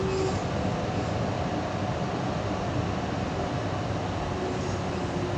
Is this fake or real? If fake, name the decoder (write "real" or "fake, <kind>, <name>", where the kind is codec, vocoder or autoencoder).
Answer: real